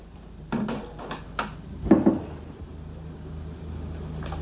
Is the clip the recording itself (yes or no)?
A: yes